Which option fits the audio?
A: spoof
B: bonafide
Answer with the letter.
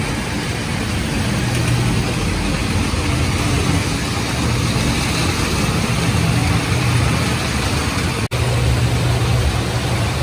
B